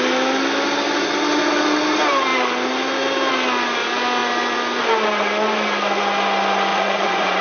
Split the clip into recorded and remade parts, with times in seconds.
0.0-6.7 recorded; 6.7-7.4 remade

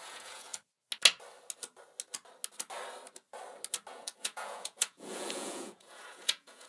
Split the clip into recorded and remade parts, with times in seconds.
0.0-0.5 remade; 0.5-3.9 recorded; 3.9-6.7 remade

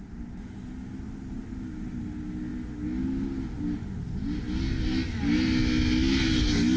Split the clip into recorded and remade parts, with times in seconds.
0.0-6.8 recorded

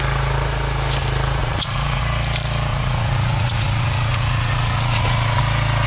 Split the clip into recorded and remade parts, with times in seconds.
0.0-1.4 recorded; 1.4-2.0 remade; 2.0-2.7 recorded; 2.7-5.4 remade; 5.4-5.9 recorded

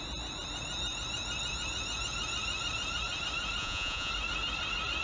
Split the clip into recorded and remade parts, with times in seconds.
0.0-3.6 recorded; 3.6-4.1 remade; 4.1-5.0 recorded

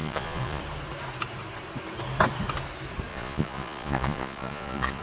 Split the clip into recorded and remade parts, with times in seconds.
0.0-0.6 remade; 0.6-3.1 recorded; 3.1-5.0 remade

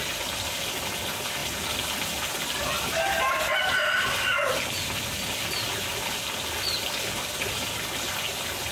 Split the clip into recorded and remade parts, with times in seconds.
0.0-8.7 recorded

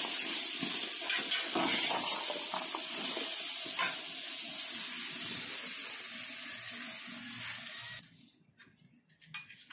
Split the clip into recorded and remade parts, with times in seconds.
0.0-9.7 recorded